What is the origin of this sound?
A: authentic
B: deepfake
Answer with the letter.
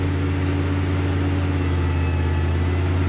A